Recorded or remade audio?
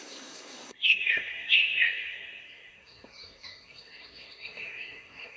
remade